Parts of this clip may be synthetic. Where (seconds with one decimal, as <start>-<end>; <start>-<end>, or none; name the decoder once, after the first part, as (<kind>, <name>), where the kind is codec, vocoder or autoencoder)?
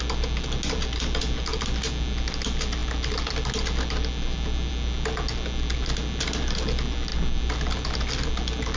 none